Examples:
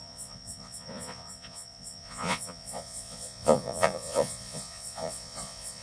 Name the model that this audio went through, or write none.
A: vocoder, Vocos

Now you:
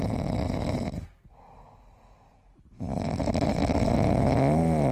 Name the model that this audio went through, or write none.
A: none